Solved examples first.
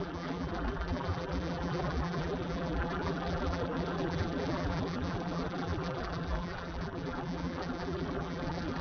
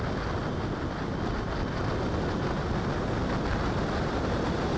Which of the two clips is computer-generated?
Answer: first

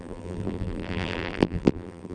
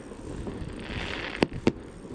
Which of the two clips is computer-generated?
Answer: first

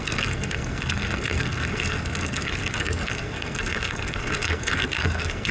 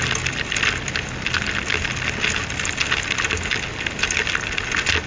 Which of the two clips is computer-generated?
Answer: first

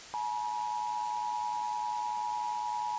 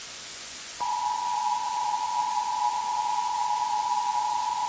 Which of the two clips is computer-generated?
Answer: second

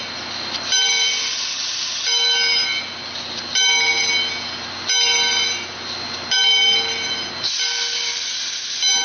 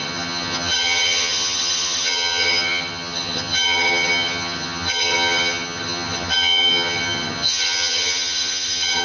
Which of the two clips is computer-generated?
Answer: second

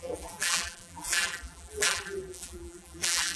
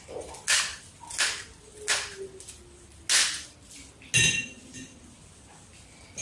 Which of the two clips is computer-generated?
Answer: first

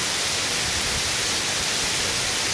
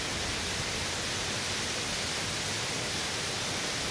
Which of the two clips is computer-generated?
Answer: first